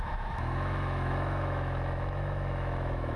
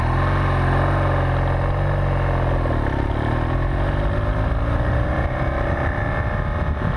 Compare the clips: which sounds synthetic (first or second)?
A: first